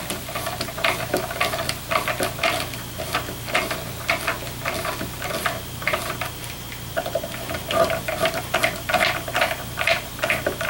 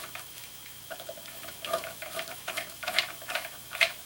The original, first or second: first